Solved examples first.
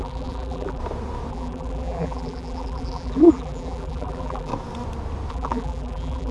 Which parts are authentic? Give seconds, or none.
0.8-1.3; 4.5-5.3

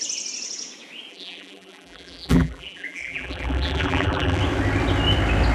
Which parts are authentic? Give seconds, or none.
0.0-1.1; 4.4-5.5

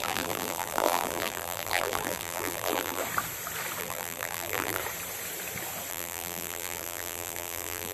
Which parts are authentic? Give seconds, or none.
3.0-3.8; 4.8-5.9

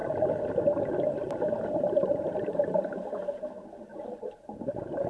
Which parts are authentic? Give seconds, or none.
0.0-1.2; 3.2-3.9

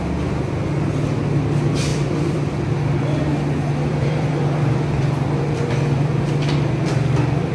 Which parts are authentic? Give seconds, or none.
0.0-1.9; 2.5-3.9; 6.3-7.5